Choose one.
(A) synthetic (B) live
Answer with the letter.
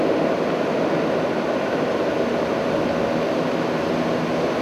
B